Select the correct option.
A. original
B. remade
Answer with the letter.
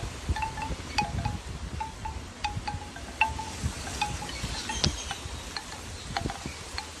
A